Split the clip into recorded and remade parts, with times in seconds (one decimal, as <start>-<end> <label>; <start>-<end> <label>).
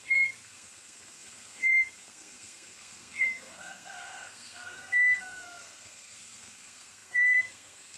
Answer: 0.0-8.0 remade